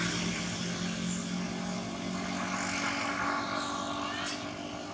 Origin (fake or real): real